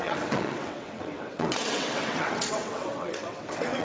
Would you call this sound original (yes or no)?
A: no